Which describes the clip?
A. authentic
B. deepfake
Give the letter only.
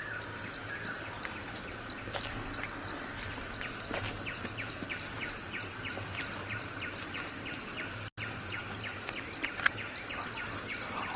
A